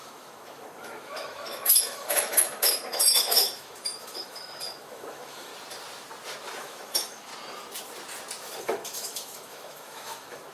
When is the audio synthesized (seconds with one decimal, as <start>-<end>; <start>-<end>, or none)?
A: 0.0-5.5; 6.6-7.3; 8.6-10.5